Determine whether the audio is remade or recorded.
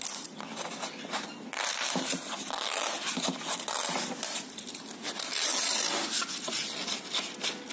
recorded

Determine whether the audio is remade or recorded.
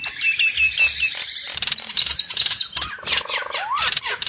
recorded